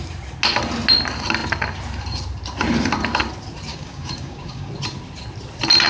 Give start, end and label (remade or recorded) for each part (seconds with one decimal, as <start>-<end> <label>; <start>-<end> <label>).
0.0-3.7 recorded; 3.7-4.7 remade; 4.7-5.9 recorded